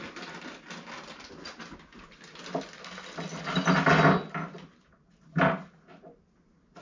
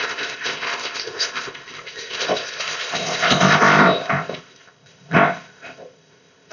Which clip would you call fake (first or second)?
second